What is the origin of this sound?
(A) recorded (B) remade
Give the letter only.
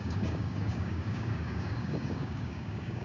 B